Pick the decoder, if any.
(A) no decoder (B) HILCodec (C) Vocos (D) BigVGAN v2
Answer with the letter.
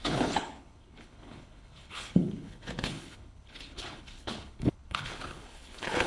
B